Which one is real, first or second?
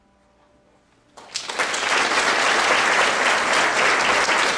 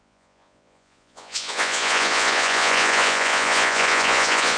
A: first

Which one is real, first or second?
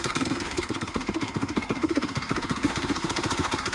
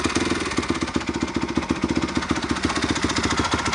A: second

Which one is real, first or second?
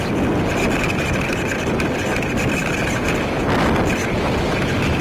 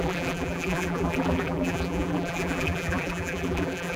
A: first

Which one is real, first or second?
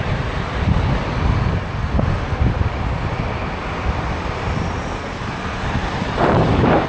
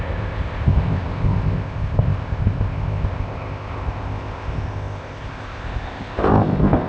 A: first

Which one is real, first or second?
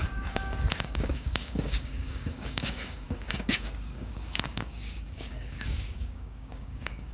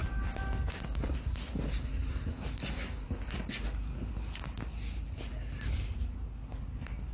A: second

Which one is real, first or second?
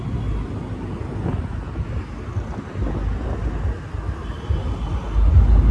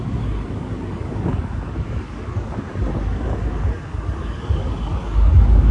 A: first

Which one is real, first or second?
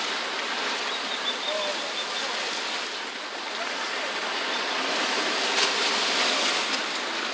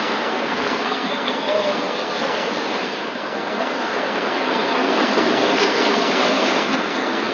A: first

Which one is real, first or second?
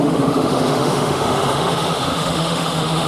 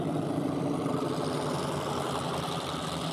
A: second